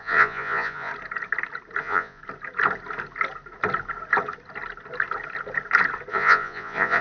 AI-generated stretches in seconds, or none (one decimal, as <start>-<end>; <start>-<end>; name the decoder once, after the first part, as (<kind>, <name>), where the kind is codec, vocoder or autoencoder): 0.0-0.9 (vocoder, Vocos); 1.8-2.2; 6.1-7.0